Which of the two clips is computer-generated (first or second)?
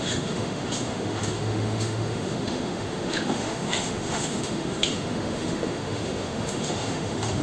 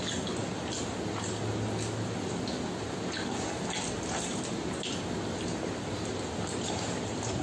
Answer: first